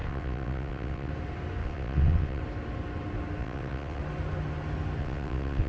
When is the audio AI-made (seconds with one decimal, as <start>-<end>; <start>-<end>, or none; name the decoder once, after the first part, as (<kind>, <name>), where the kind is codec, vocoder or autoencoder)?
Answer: 0.0-1.1 (vocoder, WaveNeXt); 1.6-2.4; 3.4-4.0; 5.0-5.7